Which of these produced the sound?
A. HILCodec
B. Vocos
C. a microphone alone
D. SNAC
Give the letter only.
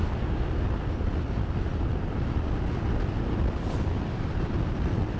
C